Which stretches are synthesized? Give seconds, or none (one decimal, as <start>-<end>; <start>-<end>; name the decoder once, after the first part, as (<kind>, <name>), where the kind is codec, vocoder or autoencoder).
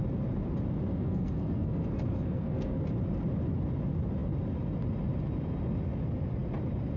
0.9-2.8 (codec, SNAC)